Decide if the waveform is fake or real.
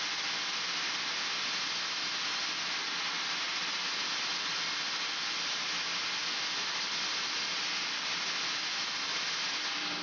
fake